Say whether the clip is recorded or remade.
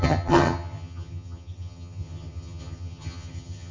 remade